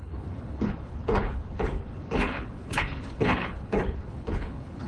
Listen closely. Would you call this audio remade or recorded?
remade